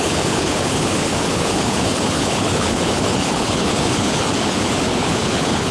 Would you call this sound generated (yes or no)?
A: yes